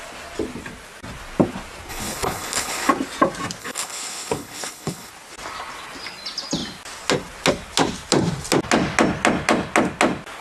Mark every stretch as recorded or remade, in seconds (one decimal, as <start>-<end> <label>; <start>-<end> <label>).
0.0-1.9 recorded; 1.9-2.9 remade; 2.9-3.6 recorded; 3.6-5.1 remade; 5.1-10.4 recorded